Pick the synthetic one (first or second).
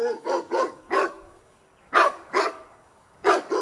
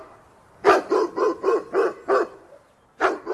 first